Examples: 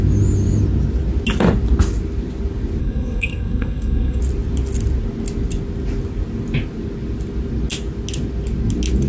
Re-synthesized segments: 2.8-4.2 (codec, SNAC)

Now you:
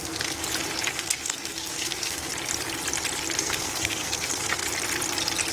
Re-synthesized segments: 0.0-0.4 (codec, SNAC); 0.9-2.3; 3.4-4.6